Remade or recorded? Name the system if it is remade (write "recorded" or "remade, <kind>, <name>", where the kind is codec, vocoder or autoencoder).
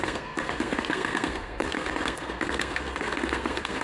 remade, codec, SNAC